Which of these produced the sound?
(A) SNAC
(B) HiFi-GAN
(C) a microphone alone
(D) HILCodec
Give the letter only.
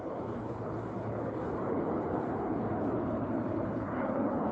D